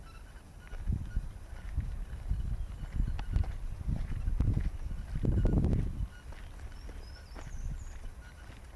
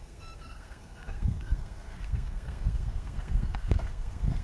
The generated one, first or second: second